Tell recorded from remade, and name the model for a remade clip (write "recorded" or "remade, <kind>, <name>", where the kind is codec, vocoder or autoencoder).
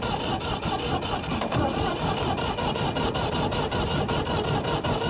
remade, vocoder, BigVGAN v2